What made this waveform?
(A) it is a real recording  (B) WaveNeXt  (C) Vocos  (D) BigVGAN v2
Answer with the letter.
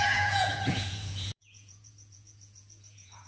C